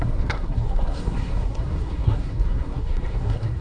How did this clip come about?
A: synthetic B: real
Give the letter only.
A